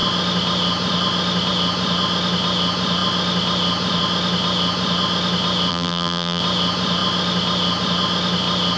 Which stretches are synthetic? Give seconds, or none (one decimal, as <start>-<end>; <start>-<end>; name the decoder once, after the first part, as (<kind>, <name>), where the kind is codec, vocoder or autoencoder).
5.7-6.4 (vocoder, BigVGAN v2)

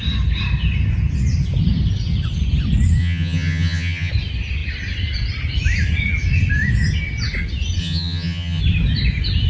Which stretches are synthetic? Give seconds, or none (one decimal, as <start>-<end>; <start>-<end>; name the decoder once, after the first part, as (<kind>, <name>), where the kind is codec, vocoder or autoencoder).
3.0-4.1 (vocoder, HiFi-GAN); 7.8-8.6

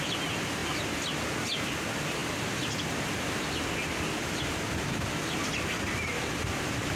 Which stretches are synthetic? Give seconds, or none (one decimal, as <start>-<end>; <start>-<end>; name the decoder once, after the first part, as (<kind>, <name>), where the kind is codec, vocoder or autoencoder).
none

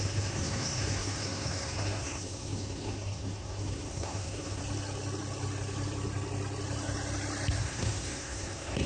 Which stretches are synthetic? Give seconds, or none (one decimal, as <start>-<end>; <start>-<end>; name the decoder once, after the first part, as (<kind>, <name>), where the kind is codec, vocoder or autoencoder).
0.0-4.6 (codec, SNAC); 7.6-8.9

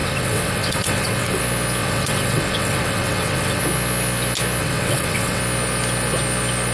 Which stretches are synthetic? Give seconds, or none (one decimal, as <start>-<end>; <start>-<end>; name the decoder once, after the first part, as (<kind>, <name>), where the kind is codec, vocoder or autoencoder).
0.0-1.4 (vocoder, WaveNeXt); 1.8-3.6; 4.6-5.4